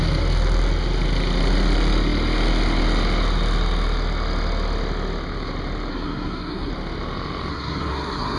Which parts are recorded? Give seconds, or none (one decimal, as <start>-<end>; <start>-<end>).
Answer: 0.0-5.9; 6.7-7.5